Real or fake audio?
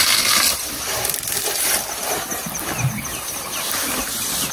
fake